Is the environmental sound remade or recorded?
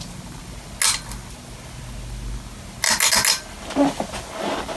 recorded